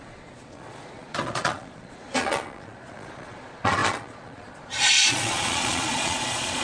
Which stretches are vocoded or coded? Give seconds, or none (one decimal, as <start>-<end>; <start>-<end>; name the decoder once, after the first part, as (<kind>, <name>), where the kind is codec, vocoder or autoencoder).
0.0-6.6 (vocoder, Vocos)

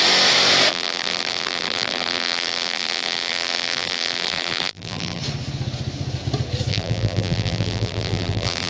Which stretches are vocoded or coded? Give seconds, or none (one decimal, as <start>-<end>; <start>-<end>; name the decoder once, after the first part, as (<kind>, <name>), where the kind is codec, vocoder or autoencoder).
0.7-5.2 (vocoder, BigVGAN v2); 6.7-8.7

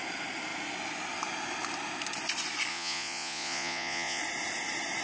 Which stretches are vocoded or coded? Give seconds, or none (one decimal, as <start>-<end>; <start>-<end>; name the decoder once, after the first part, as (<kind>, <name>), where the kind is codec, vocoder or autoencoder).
2.7-4.2 (vocoder, Vocos)

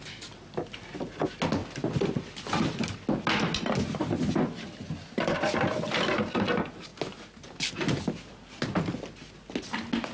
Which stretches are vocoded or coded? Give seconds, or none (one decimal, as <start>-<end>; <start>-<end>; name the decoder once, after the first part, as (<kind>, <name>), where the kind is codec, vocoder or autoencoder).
none

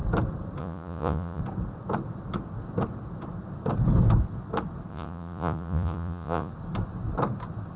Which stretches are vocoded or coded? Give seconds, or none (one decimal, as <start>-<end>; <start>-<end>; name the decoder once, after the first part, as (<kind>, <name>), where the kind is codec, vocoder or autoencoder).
0.6-1.4 (vocoder, Vocos); 4.9-6.5

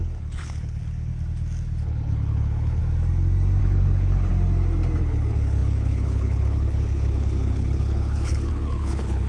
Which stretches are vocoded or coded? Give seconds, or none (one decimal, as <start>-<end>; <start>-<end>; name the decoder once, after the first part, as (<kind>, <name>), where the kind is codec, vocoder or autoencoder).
0.0-1.1 (codec, HILCodec); 1.8-2.8; 3.6-4.3; 5.0-9.3

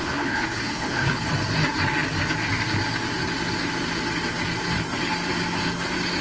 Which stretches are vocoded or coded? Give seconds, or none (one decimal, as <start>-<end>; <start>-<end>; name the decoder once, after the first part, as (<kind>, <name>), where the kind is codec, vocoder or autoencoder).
0.0-1.3 (codec, HILCodec)

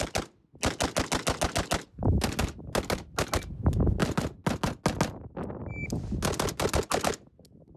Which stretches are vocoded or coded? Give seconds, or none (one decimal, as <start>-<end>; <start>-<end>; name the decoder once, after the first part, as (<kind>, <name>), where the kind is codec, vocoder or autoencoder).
none